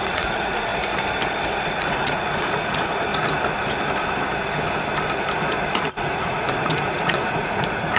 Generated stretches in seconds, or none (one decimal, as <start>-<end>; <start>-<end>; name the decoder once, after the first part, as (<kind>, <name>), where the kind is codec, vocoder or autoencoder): 0.0-0.7 (vocoder, Vocos); 1.7-3.1; 5.7-8.0